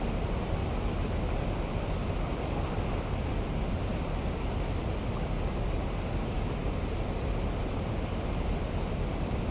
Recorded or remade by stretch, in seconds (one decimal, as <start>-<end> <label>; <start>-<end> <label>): 0.0-9.5 recorded